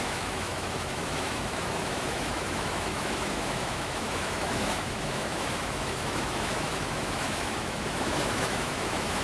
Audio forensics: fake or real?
fake